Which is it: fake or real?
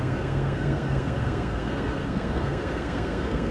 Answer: fake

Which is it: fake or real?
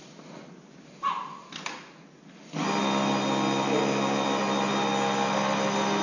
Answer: real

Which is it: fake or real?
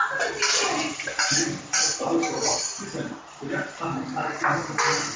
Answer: fake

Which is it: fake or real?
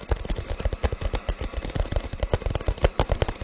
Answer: real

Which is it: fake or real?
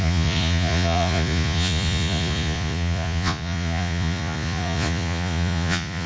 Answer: fake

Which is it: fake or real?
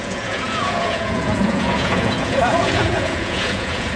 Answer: fake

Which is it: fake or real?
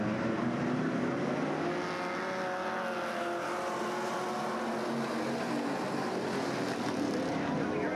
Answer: real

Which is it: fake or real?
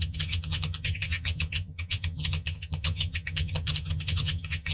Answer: fake